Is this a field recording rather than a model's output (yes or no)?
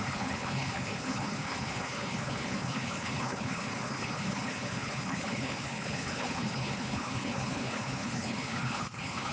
no